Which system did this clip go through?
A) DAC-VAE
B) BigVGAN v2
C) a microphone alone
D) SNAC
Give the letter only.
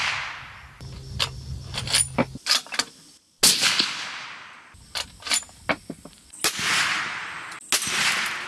C